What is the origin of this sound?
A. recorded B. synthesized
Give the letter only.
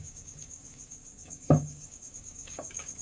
B